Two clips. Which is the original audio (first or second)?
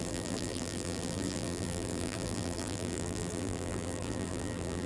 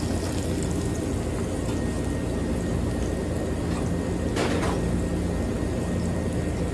second